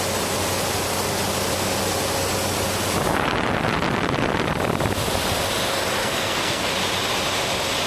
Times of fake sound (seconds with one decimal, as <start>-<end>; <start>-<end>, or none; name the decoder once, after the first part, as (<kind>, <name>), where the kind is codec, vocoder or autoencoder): 6.0-6.7 (codec, SNAC)